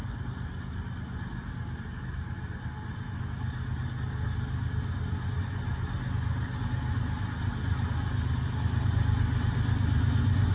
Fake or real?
real